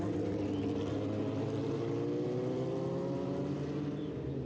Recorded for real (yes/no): yes